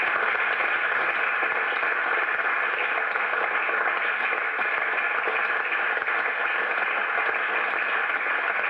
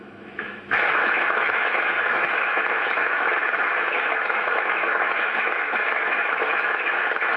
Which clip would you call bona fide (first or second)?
first